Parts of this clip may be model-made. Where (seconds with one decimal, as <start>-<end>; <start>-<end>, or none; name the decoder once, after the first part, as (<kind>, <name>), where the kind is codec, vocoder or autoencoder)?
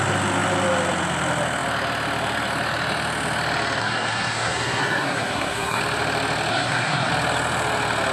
3.8-5.8 (codec, SNAC); 6.5-7.1